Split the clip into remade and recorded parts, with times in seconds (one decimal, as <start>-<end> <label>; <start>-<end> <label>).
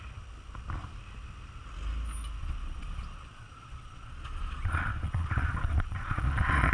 0.0-2.4 recorded; 2.4-6.7 remade